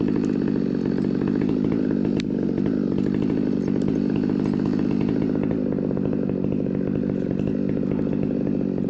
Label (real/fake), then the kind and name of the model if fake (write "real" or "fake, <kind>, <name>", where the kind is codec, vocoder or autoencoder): real